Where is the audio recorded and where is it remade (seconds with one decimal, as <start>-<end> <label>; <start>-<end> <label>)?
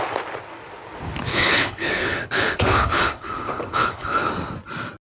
0.0-1.3 recorded; 1.3-4.3 remade; 4.3-5.0 recorded